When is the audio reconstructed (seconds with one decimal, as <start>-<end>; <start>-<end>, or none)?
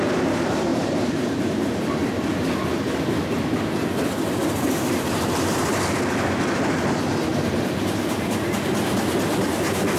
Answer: 0.7-1.8; 4.4-5.8; 7.3-7.8